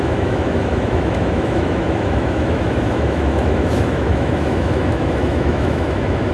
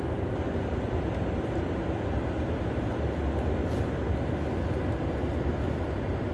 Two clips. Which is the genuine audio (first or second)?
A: second